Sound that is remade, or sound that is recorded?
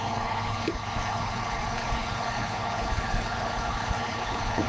remade